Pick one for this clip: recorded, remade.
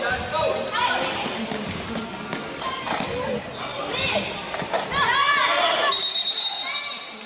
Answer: recorded